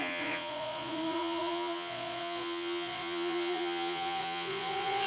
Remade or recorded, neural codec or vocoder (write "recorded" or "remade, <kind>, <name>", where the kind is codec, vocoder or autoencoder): remade, vocoder, Vocos